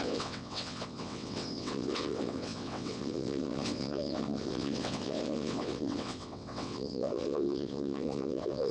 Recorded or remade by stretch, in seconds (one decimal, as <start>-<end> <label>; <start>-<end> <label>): 0.0-8.7 remade